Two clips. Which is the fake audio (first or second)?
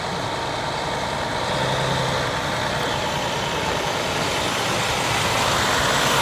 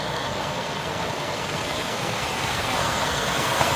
second